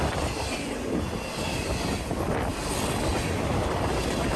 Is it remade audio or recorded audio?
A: recorded